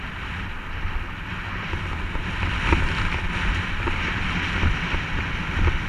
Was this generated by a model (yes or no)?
no